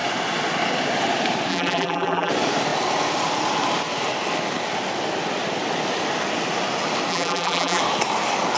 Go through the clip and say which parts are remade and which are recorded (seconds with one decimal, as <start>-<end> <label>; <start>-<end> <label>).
0.0-1.5 recorded; 1.5-2.3 remade; 2.3-7.1 recorded; 7.1-7.8 remade; 7.8-8.6 recorded